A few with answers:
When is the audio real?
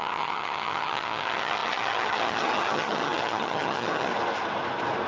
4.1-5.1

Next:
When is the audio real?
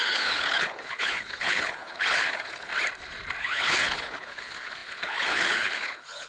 2.7-3.4